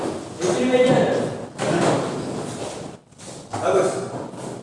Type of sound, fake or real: real